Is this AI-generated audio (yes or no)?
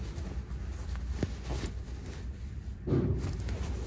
no